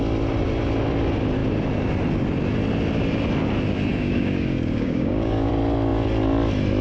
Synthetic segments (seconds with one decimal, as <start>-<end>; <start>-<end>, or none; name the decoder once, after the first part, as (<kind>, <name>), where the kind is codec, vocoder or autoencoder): 3.9-5.5 (codec, DAC)

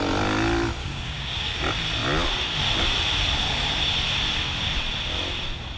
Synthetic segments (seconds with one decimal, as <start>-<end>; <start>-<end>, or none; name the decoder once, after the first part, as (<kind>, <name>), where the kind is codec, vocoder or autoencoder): 0.8-1.6 (codec, DAC)

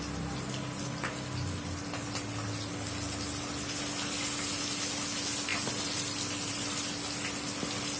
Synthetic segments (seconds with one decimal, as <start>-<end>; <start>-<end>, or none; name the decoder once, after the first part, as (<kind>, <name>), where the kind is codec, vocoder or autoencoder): none

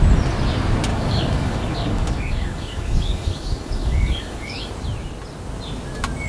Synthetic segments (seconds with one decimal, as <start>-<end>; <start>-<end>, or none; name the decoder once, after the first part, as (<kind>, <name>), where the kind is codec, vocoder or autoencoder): 0.9-4.7 (codec, DAC)

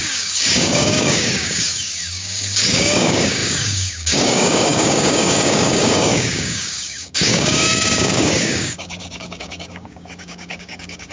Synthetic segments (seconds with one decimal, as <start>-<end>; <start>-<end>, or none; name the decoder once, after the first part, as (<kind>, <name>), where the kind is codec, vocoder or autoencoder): 0.0-11.1 (codec, DAC)

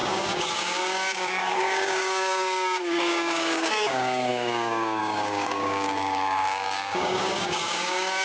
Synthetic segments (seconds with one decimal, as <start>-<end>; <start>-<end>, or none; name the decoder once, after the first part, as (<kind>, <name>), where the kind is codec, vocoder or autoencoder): 0.0-8.2 (codec, DAC)

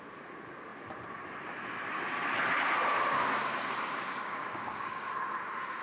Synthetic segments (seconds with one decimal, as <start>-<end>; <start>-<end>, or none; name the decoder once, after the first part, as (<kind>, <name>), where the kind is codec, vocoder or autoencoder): 3.1-5.1 (codec, DAC)